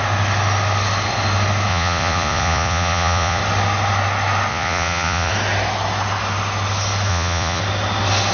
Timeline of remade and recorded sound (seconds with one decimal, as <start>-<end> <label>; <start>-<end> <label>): 0.0-1.7 recorded; 1.7-3.4 remade; 3.4-4.5 recorded; 4.5-5.3 remade; 5.3-7.1 recorded; 7.1-7.6 remade; 7.6-8.3 recorded